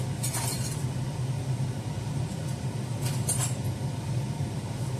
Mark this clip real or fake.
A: fake